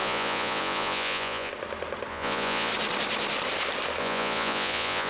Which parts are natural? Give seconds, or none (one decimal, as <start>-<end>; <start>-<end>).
1.5-2.1; 2.7-4.0